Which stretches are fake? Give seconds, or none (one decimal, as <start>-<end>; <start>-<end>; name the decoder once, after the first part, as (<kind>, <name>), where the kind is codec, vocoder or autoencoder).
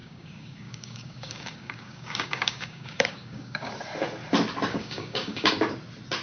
0.0-3.7 (codec, DAC); 4.7-5.5